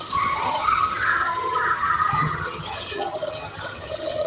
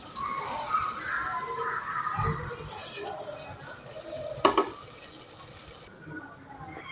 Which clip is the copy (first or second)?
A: first